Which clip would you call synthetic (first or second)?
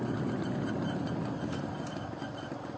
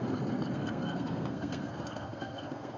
second